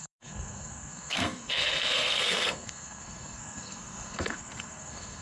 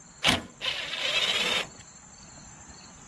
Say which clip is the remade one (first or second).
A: first